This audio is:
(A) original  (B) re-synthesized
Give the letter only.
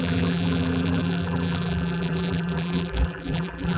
B